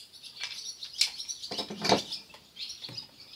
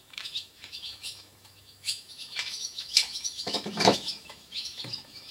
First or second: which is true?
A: first